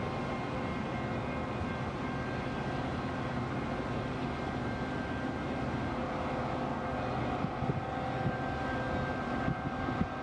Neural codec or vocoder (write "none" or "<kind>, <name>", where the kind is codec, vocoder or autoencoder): none